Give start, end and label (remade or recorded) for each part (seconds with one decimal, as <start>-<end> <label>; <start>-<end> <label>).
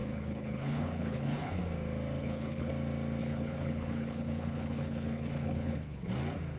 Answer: 0.0-1.6 remade; 1.6-2.2 recorded; 2.2-2.7 remade; 2.7-3.2 recorded; 3.2-6.1 remade; 6.1-6.6 recorded